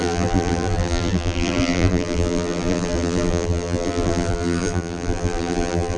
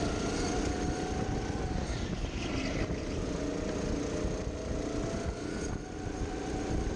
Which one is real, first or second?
second